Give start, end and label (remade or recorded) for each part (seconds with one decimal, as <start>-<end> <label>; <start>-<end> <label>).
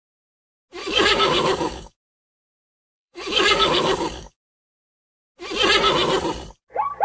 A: 0.0-0.8 recorded; 0.8-5.0 remade; 5.0-7.0 recorded